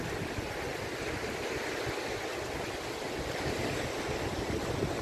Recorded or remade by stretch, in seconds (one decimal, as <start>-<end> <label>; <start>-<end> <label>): 0.0-5.0 recorded